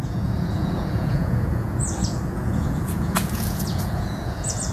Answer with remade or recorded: remade